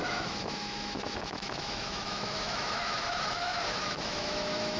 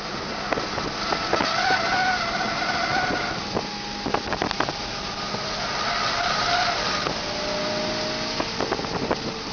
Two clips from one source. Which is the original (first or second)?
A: second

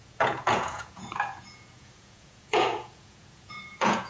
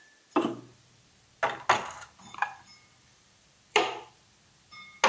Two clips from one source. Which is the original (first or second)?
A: second